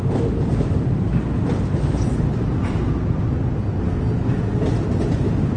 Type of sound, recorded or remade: recorded